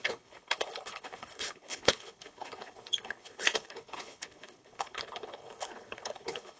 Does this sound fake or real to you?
fake